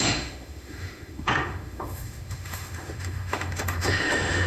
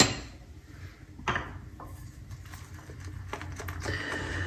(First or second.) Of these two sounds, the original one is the second